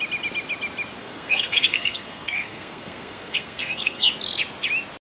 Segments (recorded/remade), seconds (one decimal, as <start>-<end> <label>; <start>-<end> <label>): 0.0-1.0 recorded; 1.0-4.1 remade; 4.1-5.1 recorded